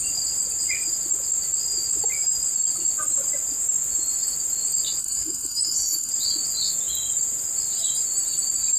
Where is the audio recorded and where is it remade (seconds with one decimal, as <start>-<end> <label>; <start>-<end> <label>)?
0.0-5.0 recorded; 5.0-6.1 remade; 6.1-8.8 recorded